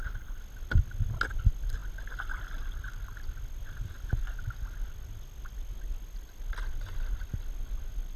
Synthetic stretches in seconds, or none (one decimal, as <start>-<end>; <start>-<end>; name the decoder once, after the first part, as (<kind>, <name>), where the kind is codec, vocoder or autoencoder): none